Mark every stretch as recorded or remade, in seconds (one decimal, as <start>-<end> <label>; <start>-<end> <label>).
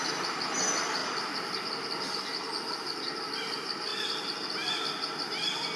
0.0-5.8 recorded